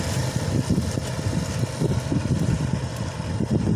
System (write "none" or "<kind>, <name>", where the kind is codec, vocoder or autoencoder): none